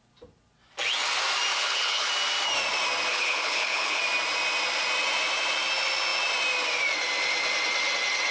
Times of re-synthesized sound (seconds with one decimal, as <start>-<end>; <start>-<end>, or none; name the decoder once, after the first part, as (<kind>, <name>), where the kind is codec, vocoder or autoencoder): 1.5-2.1 (codec, HILCodec); 3.1-4.0